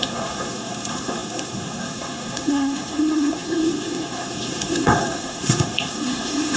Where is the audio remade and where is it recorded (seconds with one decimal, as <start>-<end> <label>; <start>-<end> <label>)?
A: 0.0-6.6 remade